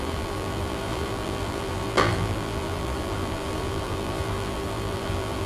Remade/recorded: remade